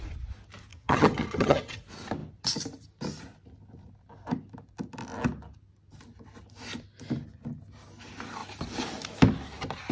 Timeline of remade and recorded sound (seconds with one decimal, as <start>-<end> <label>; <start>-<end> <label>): 0.0-0.7 recorded; 0.7-1.8 remade; 1.8-9.9 recorded